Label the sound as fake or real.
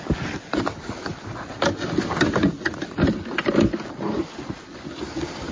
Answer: real